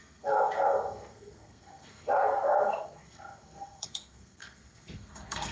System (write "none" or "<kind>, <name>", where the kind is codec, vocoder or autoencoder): codec, SNAC